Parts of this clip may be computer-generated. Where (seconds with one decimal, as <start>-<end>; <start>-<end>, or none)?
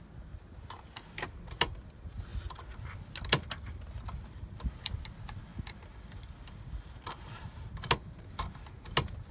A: none